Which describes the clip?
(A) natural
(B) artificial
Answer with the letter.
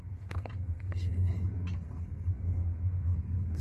B